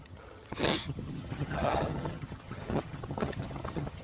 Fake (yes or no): yes